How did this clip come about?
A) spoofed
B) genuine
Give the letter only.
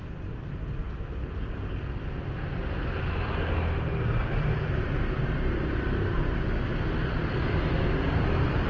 B